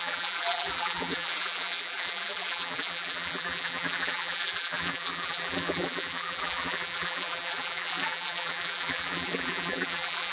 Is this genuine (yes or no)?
no